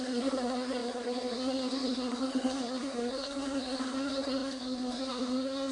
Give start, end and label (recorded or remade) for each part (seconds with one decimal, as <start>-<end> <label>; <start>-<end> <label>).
0.0-5.7 remade

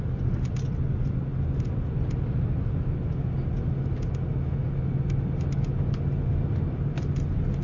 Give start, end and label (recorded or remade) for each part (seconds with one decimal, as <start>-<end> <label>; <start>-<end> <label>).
0.0-7.6 recorded

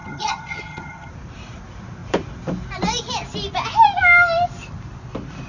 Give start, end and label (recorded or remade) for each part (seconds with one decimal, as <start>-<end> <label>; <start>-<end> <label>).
0.0-1.1 remade; 1.1-5.5 recorded